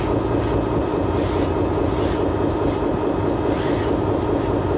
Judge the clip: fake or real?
real